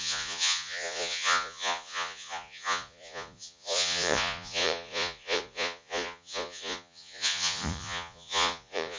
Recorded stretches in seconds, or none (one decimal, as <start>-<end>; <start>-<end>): none